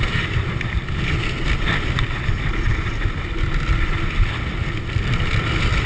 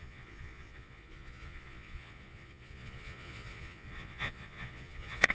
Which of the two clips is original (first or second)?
first